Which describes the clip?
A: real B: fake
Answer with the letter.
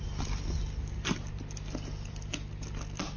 A